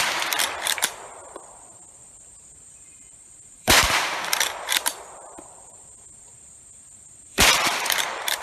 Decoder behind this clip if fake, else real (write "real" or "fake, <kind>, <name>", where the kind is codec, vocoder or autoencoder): fake, vocoder, BigVGAN v2